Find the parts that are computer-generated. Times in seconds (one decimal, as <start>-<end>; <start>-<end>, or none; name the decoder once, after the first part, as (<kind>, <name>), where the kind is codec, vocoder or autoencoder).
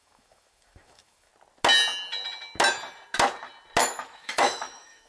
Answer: 0.0-1.3 (autoencoder, DAC-VAE); 3.8-5.1